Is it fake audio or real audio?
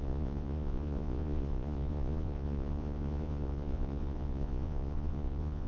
fake